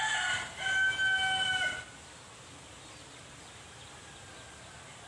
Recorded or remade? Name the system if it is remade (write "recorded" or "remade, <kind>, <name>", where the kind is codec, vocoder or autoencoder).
recorded